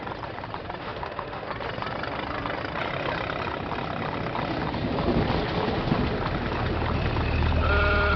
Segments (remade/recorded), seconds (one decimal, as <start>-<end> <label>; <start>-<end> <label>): 0.0-0.8 recorded; 0.8-1.5 remade; 1.5-8.2 recorded

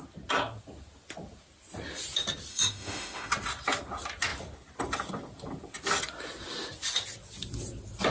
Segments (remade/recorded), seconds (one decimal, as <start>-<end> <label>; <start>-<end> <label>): 0.0-2.5 recorded; 2.5-3.3 remade; 3.3-8.1 recorded